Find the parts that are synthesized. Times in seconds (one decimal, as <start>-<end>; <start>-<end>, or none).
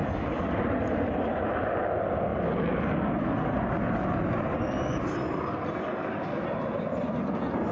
none